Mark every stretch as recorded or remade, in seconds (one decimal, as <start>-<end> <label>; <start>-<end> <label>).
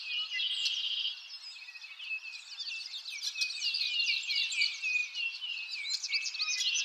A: 0.0-5.0 recorded; 5.0-6.1 remade; 6.1-6.8 recorded